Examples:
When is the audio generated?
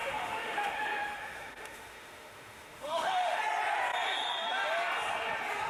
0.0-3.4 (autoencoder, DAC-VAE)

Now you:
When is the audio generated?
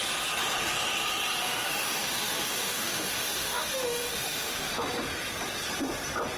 1.4-4.7 (autoencoder, DAC-VAE)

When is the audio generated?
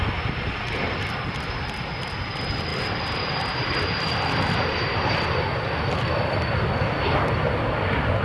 none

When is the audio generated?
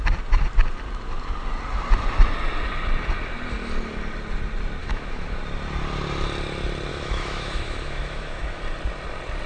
4.8-5.4 (autoencoder, DAC-VAE); 6.9-8.6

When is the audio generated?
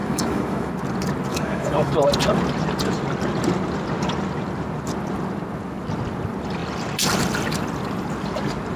0.0-0.7 (autoencoder, DAC-VAE); 1.3-1.9